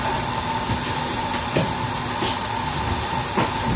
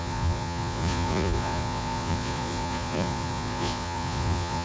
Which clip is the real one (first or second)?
first